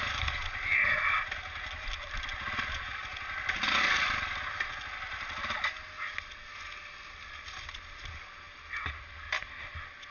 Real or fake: real